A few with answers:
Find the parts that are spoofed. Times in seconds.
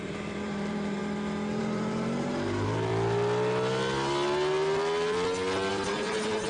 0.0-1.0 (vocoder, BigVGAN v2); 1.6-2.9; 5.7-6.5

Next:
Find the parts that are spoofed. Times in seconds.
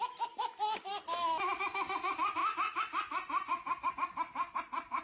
2.4-3.9 (vocoder, BigVGAN v2)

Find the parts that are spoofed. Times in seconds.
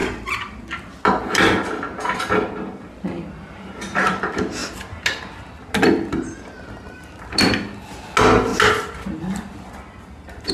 0.0-1.7 (vocoder, BigVGAN v2)